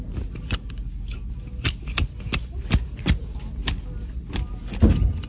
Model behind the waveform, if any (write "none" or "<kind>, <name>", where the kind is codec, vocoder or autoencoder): none